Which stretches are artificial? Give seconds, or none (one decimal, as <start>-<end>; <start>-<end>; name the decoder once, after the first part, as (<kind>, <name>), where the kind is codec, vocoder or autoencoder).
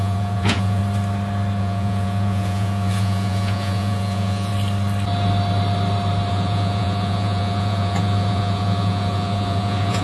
0.0-0.8 (vocoder, Vocos); 1.6-4.5; 6.3-10.0